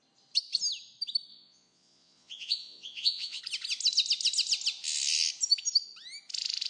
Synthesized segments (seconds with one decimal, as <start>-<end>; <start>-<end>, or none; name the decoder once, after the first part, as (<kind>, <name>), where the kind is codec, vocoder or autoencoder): 1.3-3.4 (vocoder, Vocos)